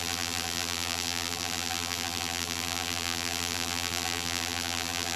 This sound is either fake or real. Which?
fake